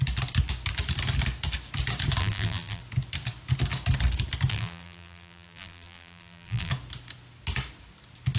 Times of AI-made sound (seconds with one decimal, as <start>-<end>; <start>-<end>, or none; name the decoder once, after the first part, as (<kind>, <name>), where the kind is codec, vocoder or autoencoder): 2.2-2.8 (vocoder, BigVGAN v2); 4.5-6.7